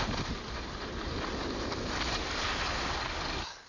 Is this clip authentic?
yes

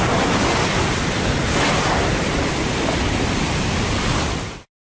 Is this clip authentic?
yes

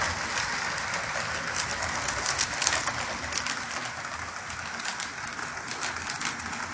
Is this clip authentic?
yes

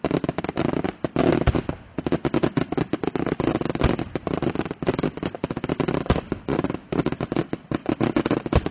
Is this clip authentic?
yes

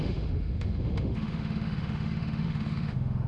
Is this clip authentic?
no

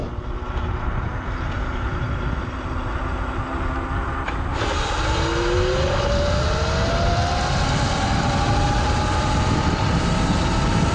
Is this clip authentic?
yes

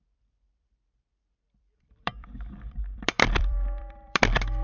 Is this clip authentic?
no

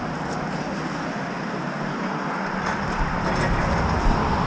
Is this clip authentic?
yes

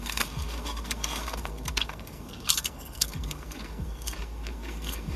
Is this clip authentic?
no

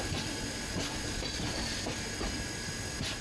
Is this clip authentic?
yes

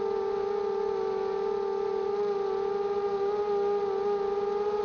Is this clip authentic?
yes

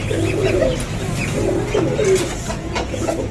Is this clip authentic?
yes